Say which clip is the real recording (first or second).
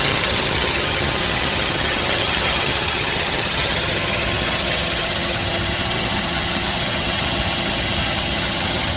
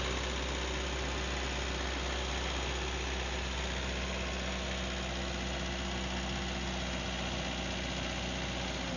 second